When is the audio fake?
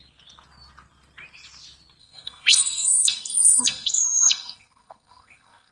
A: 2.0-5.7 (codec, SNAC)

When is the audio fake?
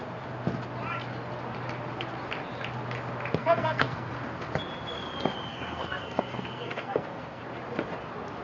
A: 3.4-4.1 (codec, SNAC); 5.5-7.4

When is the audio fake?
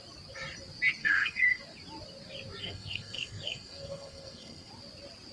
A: 1.0-1.6 (codec, SNAC); 2.6-4.7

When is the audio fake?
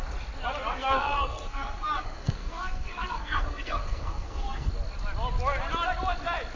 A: 0.7-4.7 (codec, SNAC)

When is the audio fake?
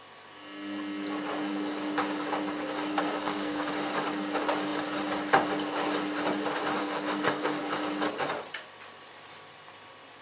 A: 2.9-3.7 (codec, SNAC); 6.8-7.6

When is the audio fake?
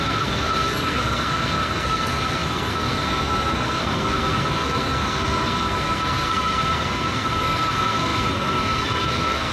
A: 0.0-9.5 (codec, SNAC)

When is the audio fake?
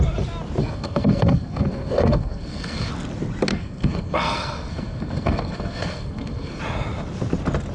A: 0.6-2.9 (codec, SNAC); 3.5-6.6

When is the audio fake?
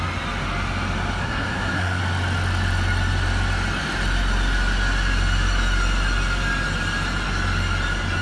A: 1.2-2.0 (codec, SNAC)